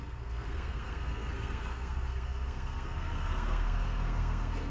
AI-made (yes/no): yes